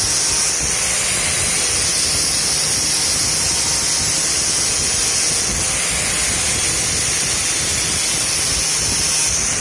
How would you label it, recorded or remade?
recorded